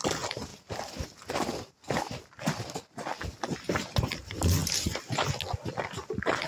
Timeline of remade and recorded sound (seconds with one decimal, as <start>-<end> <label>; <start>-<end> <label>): 0.0-6.5 recorded